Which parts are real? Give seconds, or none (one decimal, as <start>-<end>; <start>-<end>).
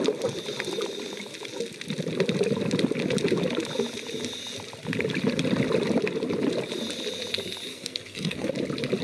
0.0-7.7; 8.5-9.0